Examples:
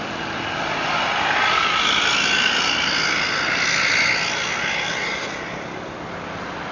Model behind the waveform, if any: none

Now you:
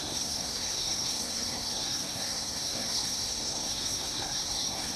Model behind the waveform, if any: codec, SNAC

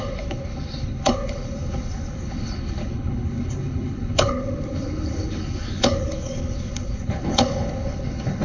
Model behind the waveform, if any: codec, HILCodec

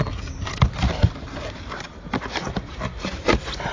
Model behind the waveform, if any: none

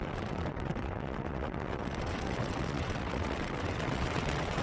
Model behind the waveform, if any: vocoder, WaveNeXt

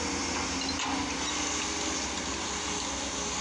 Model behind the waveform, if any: none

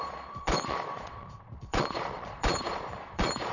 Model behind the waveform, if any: vocoder, Vocos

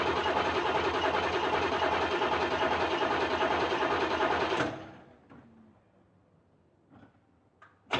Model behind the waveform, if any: none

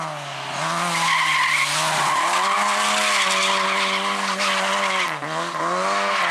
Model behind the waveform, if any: none